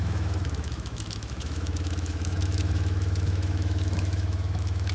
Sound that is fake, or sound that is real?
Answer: fake